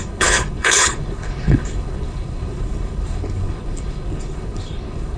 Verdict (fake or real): fake